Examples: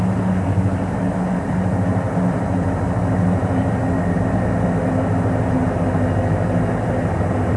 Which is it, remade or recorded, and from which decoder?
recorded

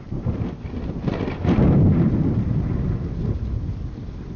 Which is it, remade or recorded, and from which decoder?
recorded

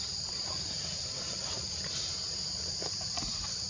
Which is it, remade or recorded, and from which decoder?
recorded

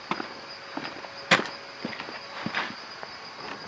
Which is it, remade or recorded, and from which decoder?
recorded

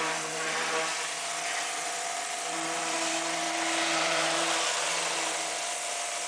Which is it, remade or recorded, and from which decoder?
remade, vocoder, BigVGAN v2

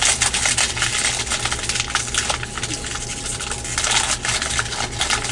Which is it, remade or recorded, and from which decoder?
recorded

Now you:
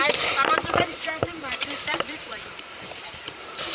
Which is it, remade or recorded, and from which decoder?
remade, vocoder, BigVGAN v2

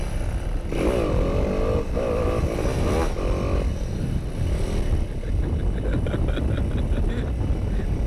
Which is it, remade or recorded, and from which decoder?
recorded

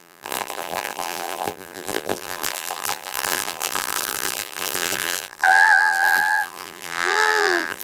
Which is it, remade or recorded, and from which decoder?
remade, vocoder, BigVGAN v2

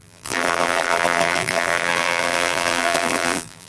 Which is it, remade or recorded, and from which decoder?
remade, vocoder, BigVGAN v2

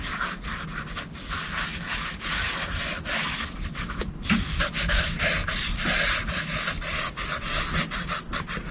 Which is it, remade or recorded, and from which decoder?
recorded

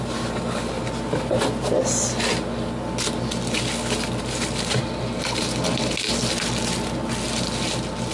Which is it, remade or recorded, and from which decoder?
recorded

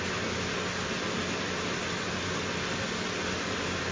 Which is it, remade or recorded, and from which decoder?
recorded